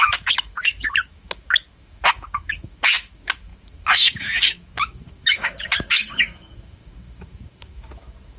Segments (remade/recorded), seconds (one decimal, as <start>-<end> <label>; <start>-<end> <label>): 0.0-8.4 remade